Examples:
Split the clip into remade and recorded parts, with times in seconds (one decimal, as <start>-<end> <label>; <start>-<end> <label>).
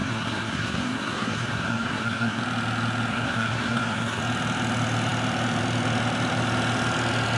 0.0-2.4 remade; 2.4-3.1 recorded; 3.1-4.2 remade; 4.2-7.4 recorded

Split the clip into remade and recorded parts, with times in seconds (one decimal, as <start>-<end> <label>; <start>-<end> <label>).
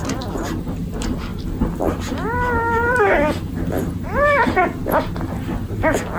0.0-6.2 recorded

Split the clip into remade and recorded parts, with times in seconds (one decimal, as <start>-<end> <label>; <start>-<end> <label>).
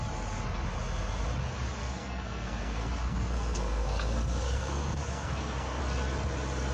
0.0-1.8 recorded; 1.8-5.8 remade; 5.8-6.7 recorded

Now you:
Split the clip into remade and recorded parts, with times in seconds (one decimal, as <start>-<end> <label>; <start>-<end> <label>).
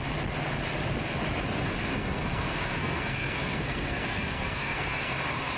0.0-1.9 recorded; 1.9-5.1 remade; 5.1-5.6 recorded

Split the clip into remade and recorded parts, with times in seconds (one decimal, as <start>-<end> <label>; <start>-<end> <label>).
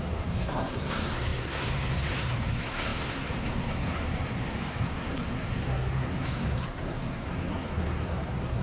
0.0-8.6 remade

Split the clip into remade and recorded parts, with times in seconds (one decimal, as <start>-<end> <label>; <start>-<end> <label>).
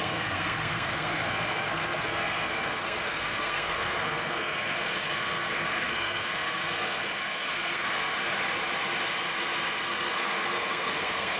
0.0-8.0 remade; 8.0-9.9 recorded; 9.9-11.4 remade